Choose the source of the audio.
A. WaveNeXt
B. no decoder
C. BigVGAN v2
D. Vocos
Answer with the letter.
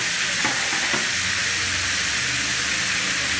B